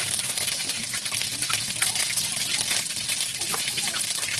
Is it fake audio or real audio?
real